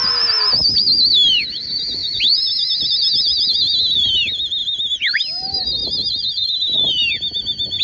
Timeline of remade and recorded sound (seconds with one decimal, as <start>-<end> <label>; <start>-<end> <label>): 0.0-2.0 recorded; 2.0-2.9 remade; 2.9-4.6 recorded; 4.6-7.8 remade